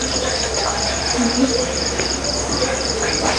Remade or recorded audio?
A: remade